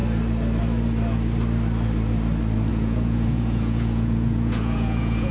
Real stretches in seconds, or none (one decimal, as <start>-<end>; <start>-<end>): 0.0-2.7